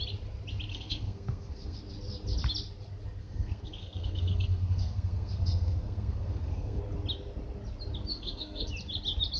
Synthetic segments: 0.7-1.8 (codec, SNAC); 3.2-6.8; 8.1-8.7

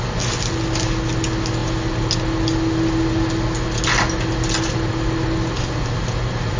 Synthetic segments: none

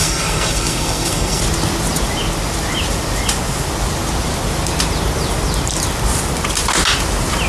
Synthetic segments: 0.0-1.4 (codec, SNAC)

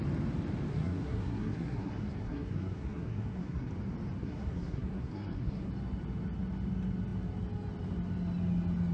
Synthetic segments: 0.7-3.7 (codec, SNAC); 4.2-5.7

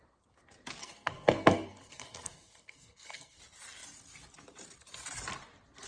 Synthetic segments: 0.8-3.4 (codec, SNAC)

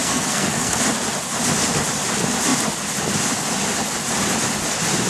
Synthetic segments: 0.0-0.8 (codec, SNAC)

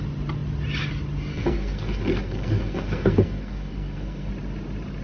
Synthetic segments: 1.3-4.3 (codec, SNAC)